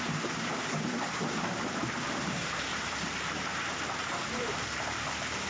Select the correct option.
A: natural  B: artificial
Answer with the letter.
B